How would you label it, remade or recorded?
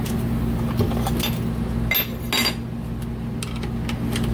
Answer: recorded